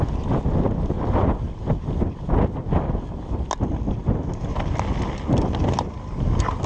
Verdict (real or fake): real